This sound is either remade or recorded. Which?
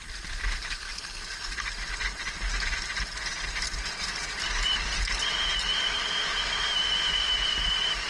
recorded